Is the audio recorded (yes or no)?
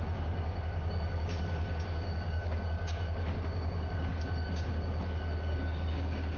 no